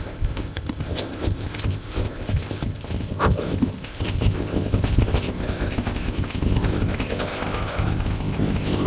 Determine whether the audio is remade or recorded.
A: remade